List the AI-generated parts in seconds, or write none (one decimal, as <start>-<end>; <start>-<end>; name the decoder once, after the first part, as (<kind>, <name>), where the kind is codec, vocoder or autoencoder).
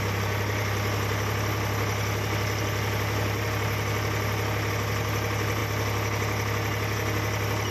none